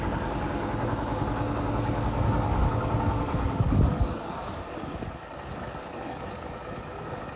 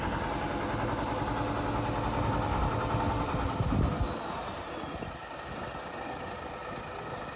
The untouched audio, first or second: second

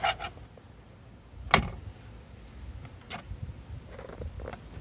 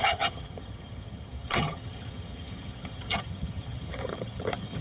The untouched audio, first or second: first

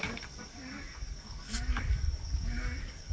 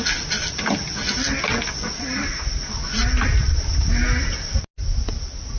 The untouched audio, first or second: second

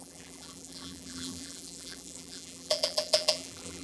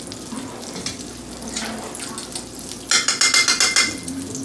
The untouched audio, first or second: second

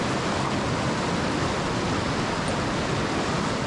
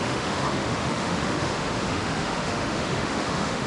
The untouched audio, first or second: first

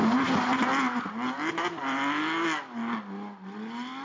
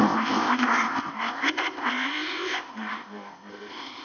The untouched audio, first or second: first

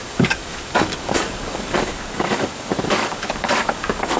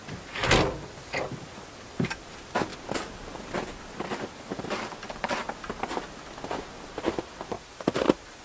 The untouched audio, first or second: second